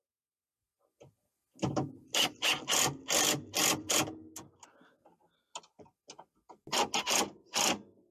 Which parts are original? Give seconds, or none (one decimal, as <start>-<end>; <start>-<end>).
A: 0.0-8.1